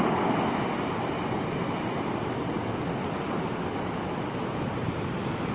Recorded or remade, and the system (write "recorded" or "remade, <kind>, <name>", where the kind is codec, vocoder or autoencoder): recorded